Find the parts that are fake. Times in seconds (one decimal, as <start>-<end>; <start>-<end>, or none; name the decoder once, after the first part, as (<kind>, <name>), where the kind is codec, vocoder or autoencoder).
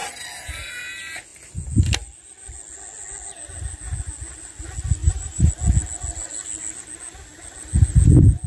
5.0-5.5 (vocoder, BigVGAN v2)